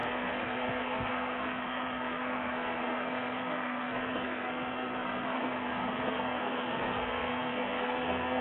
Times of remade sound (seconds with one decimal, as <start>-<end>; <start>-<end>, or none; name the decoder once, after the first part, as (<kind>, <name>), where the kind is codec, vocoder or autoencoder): 0.0-8.4 (codec, SNAC)